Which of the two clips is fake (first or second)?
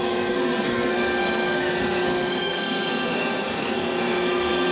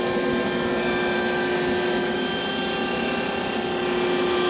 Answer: first